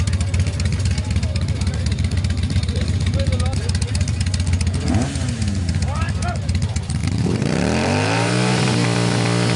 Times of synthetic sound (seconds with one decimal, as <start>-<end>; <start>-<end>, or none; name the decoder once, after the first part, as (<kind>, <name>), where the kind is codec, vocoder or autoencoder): 7.0-8.6 (vocoder, BigVGAN v2)